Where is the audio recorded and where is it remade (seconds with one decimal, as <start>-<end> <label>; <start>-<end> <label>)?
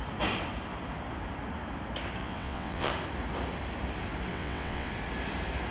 0.0-2.2 recorded; 2.2-2.9 remade; 2.9-4.3 recorded; 4.3-4.9 remade; 4.9-5.7 recorded